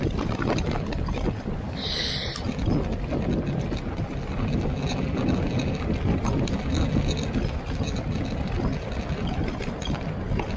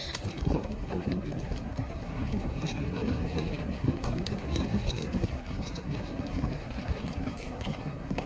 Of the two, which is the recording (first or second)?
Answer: first